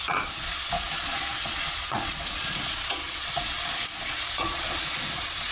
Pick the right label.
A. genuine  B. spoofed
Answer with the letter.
B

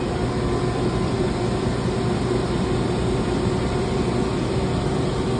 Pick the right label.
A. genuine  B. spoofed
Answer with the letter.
A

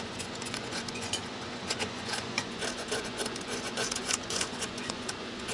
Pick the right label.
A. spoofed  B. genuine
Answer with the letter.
A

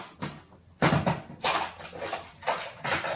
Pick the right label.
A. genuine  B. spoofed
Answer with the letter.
A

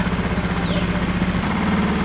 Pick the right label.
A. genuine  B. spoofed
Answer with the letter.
A